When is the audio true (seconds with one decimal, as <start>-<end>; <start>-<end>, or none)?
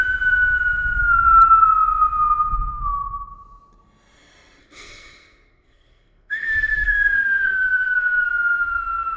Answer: 0.0-4.6; 8.3-9.2